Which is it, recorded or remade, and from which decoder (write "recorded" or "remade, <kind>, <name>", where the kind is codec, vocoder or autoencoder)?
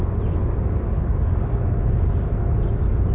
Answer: recorded